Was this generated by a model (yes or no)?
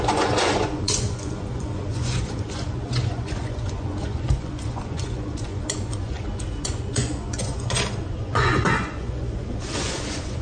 yes